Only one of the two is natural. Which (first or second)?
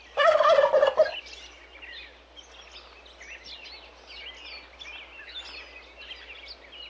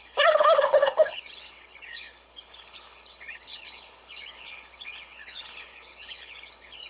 first